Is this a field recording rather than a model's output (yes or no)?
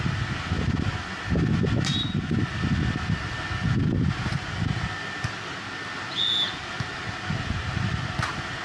yes